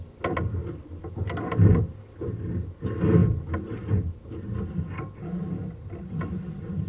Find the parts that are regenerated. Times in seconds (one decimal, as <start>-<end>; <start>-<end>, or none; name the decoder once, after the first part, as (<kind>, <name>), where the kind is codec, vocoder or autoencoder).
none